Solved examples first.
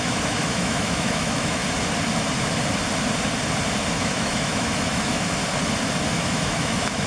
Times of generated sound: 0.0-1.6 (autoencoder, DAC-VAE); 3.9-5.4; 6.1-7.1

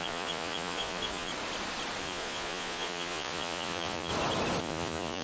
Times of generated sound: 0.0-1.3 (vocoder, Vocos); 2.0-4.1; 4.6-5.2

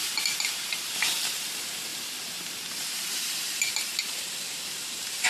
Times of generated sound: none

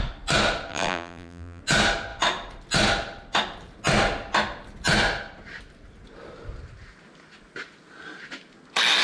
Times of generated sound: 0.7-1.6 (vocoder, BigVGAN v2)

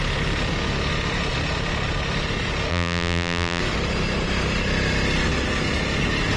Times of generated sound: 2.7-3.6 (vocoder, BigVGAN v2)